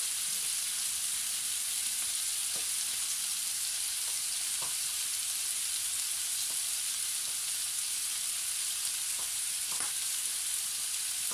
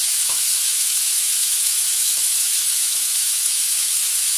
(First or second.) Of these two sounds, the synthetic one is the second